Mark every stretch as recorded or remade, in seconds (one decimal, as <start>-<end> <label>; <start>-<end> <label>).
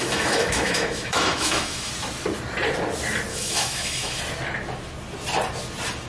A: 0.0-1.9 remade; 1.9-3.3 recorded; 3.3-4.2 remade; 4.2-6.1 recorded